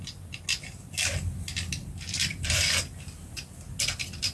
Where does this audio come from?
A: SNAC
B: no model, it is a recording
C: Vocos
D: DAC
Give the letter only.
B